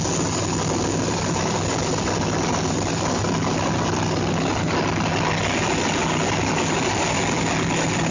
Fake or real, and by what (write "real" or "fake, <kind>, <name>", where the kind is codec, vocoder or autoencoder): real